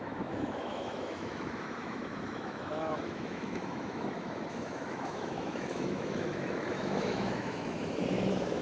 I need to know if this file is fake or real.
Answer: fake